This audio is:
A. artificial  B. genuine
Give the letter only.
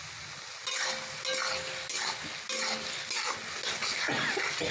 B